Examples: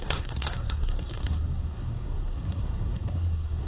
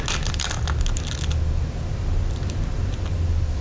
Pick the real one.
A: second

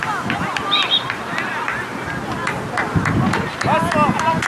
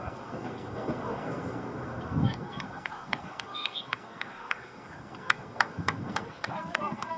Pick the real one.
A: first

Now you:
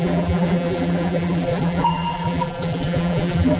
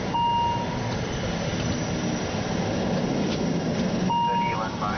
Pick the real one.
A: second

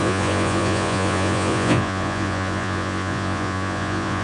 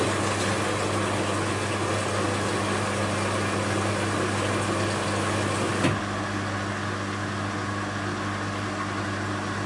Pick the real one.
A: second